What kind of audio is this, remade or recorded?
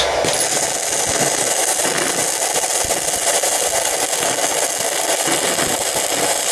recorded